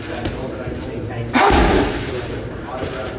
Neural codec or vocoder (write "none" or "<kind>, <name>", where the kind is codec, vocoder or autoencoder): vocoder, BigVGAN v2